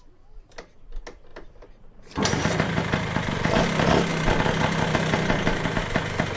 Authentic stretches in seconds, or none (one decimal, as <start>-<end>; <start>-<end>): 0.0-1.3; 3.6-6.4